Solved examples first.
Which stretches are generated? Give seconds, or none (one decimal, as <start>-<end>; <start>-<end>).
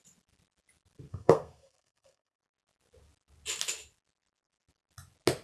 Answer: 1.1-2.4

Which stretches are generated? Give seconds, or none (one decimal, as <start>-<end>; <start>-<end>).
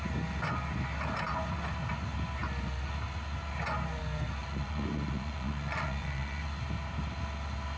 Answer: 4.4-6.4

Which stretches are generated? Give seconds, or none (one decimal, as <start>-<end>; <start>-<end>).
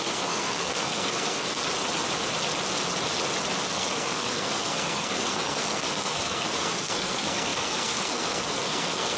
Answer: 0.0-1.6; 3.6-9.2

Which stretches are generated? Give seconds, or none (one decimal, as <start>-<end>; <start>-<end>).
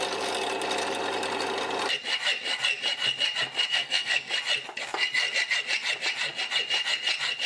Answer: 3.7-4.3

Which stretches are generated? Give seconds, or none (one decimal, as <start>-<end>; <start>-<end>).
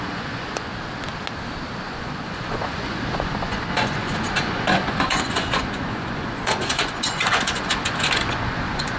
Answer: 0.0-0.7; 1.8-9.0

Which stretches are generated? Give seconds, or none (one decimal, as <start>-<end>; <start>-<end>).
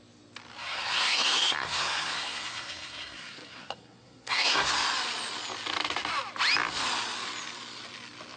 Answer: 0.6-4.7